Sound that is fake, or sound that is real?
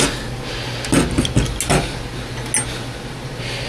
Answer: real